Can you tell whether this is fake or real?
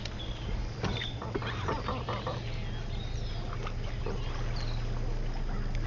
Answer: real